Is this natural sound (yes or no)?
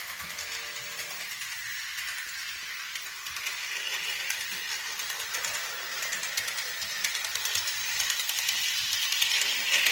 yes